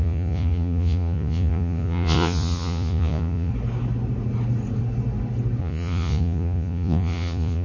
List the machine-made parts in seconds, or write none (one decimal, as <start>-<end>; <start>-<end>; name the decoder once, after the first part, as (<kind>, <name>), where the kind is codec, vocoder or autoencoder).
0.0-3.5 (vocoder, Vocos); 5.6-7.6